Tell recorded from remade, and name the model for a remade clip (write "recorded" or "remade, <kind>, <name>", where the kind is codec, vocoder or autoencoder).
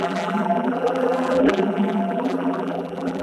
remade, vocoder, BigVGAN v2